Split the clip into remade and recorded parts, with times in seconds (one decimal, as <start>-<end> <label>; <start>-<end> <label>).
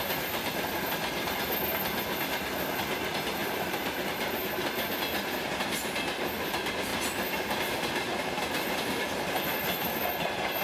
0.0-3.4 recorded; 3.4-4.0 remade; 4.0-8.1 recorded; 8.1-10.0 remade; 10.0-10.6 recorded